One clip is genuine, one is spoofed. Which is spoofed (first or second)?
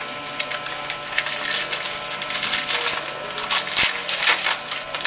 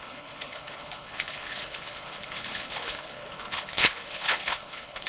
second